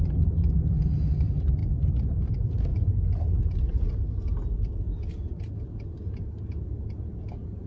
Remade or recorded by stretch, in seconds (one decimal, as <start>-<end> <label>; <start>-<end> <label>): 0.0-7.7 recorded